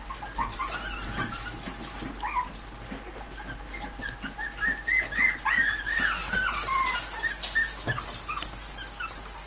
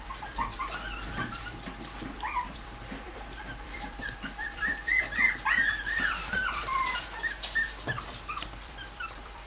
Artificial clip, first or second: second